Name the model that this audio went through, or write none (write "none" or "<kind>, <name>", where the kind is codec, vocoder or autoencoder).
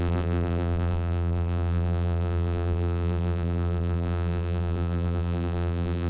vocoder, BigVGAN v2